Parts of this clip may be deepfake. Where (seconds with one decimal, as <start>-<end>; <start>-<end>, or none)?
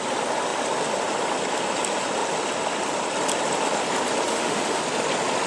4.3-4.8